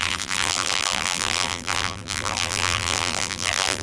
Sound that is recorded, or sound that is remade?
remade